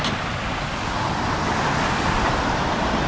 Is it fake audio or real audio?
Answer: real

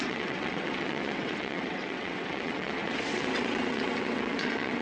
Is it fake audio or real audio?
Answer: fake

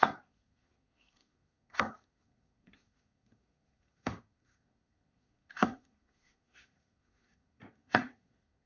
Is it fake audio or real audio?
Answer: fake